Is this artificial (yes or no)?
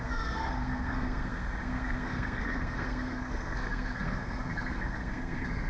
yes